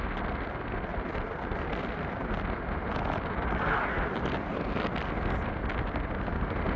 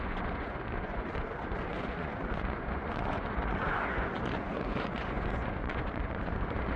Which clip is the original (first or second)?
first